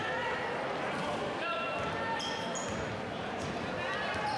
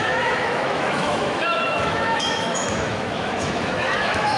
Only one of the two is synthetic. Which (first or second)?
second